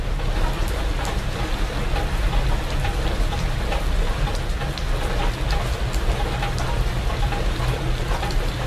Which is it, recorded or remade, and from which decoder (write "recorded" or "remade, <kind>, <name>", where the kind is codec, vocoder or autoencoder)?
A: recorded